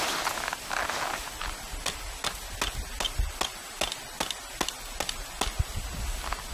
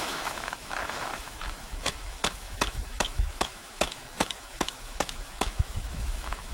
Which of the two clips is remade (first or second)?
second